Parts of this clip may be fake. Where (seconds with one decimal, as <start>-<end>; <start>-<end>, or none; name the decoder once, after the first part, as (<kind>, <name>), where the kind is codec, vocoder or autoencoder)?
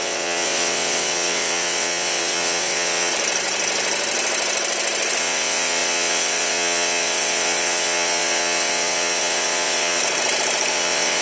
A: 0.0-3.1 (vocoder, WaveNeXt); 5.2-10.0; 10.7-11.2